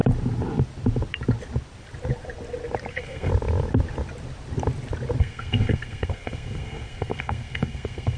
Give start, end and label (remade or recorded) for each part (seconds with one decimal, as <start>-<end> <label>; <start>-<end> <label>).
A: 0.0-2.9 recorded; 2.9-3.3 remade; 3.3-5.2 recorded; 5.2-8.2 remade